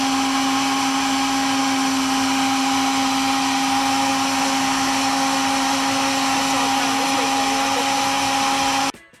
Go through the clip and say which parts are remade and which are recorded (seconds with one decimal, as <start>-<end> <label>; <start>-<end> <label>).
0.0-9.2 recorded